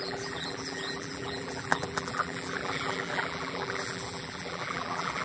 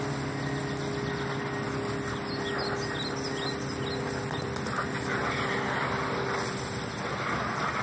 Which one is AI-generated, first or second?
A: first